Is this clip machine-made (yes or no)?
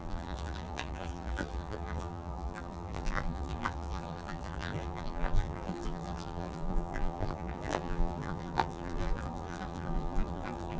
yes